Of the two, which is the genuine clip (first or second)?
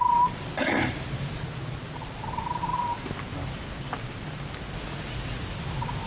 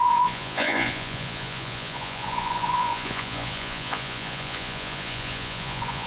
first